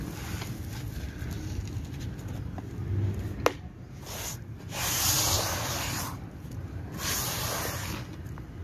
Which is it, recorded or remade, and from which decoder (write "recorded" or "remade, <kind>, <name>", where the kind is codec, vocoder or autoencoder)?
recorded